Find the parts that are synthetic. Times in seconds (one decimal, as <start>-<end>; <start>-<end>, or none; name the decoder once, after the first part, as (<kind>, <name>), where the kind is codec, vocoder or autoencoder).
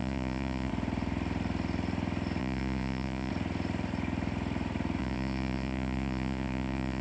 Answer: 0.0-0.7 (vocoder, Vocos); 2.4-3.3; 5.0-7.0